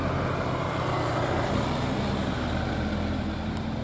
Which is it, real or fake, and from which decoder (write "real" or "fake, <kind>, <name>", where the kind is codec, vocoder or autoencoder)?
real